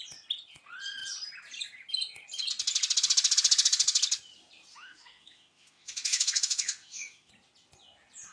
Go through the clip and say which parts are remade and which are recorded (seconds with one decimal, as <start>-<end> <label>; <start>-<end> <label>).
0.0-4.7 recorded; 4.7-7.3 remade; 7.3-8.3 recorded